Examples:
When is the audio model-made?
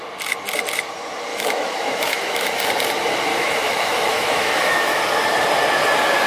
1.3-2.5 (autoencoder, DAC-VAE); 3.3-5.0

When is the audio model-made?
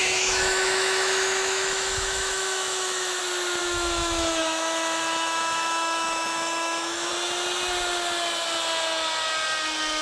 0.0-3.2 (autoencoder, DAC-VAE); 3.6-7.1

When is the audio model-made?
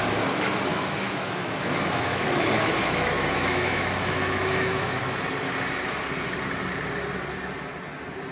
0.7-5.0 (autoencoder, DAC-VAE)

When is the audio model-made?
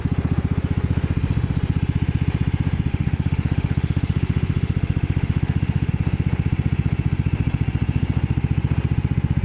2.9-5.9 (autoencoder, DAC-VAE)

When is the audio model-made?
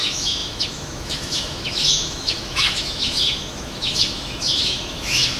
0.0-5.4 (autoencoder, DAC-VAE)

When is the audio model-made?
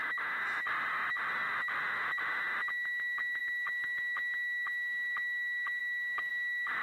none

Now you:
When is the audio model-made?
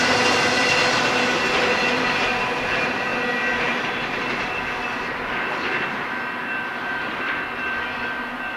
none